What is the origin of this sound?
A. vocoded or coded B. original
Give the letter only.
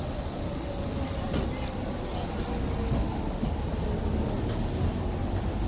B